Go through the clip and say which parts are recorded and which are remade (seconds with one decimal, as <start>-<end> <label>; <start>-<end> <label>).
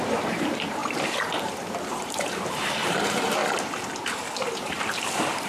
0.0-3.4 remade; 3.4-4.5 recorded; 4.5-5.5 remade